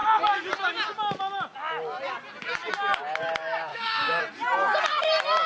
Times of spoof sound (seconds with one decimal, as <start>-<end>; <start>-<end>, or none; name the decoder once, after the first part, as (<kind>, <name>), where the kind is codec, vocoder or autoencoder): 3.7-4.2 (codec, DAC)